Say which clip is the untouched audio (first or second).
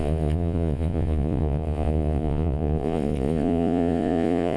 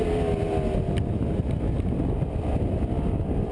second